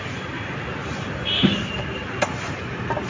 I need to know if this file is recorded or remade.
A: recorded